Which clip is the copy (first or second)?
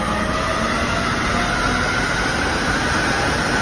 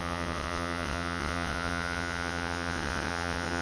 second